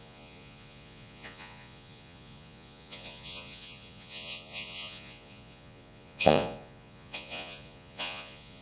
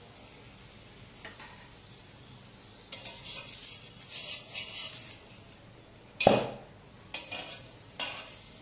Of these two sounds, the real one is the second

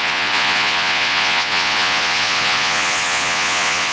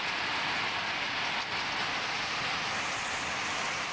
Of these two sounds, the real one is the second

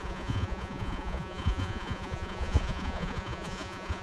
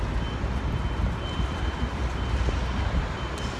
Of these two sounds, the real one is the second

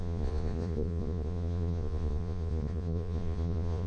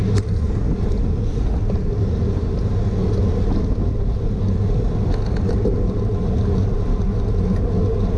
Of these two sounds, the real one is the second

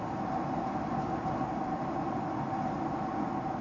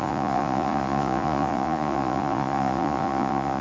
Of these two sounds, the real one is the first